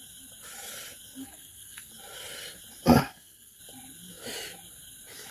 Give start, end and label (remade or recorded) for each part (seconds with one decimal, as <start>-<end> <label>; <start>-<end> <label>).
0.0-1.2 recorded; 1.2-1.9 remade; 1.9-3.0 recorded; 3.0-3.6 remade; 3.6-5.3 recorded